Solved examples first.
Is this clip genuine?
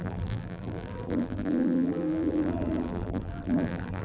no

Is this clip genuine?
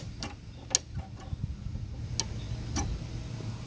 yes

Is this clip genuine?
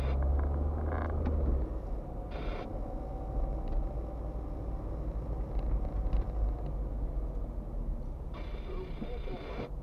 yes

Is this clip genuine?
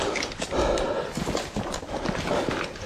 yes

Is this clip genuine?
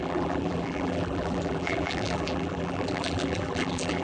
no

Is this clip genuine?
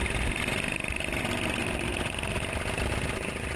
yes